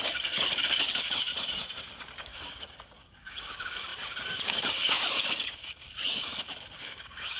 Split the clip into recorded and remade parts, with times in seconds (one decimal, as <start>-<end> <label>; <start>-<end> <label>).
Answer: 0.0-1.3 remade; 1.3-2.0 recorded; 2.0-7.4 remade